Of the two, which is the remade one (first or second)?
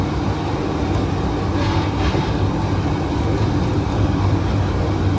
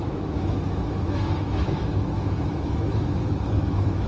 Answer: second